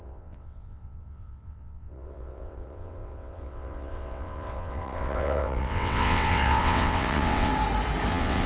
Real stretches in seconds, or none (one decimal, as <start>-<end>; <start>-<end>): 7.5-8.1